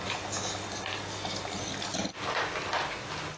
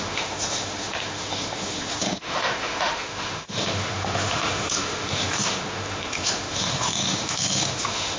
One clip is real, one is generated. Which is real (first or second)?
first